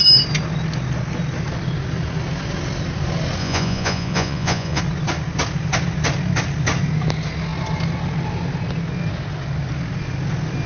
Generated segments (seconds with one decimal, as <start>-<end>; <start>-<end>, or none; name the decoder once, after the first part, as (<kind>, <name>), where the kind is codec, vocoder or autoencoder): 3.4-4.8 (vocoder, Vocos)